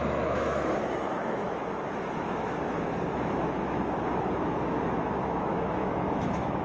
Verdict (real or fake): fake